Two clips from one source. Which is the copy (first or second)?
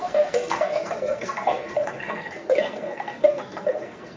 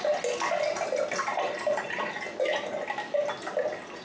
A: first